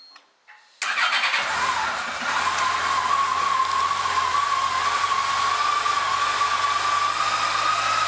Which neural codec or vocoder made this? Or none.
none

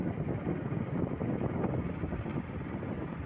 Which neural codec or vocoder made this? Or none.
none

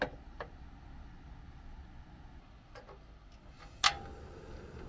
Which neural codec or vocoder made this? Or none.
none